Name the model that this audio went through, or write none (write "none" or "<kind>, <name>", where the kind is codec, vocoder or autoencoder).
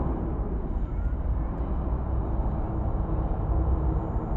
none